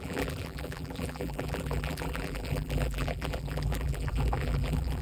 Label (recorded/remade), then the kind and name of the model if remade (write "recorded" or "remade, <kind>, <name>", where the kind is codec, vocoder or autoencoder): remade, vocoder, BigVGAN v2